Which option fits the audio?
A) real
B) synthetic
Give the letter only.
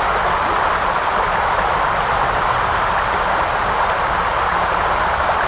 A